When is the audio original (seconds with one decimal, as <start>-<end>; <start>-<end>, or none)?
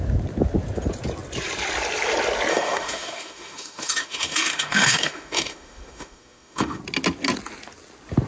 0.0-2.5; 6.8-8.3